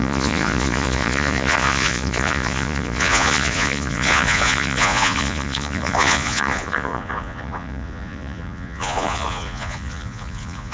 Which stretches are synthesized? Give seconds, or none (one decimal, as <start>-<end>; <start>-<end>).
0.0-10.7